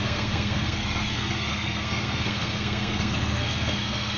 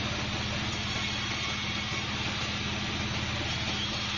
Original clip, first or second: second